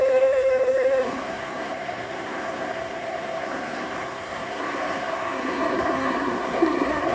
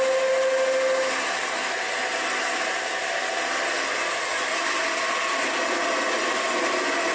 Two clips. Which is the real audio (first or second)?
second